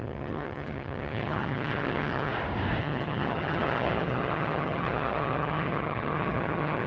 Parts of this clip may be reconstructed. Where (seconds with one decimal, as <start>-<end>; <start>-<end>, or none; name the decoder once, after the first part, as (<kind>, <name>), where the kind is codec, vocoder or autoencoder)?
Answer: 0.0-2.3 (vocoder, HiFi-GAN); 2.8-6.9